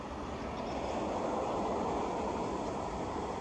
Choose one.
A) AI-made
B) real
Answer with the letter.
A